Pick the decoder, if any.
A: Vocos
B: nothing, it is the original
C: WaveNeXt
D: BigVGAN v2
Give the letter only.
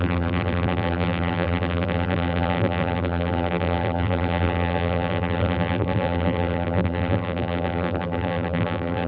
D